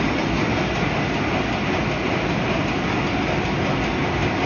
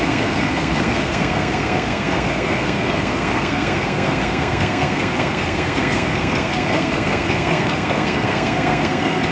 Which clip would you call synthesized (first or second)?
second